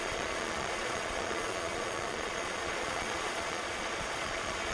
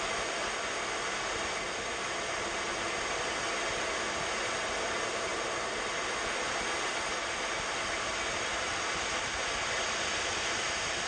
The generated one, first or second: first